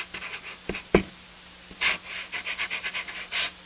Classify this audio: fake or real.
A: real